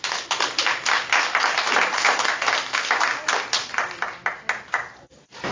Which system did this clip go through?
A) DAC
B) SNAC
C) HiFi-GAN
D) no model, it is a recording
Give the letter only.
D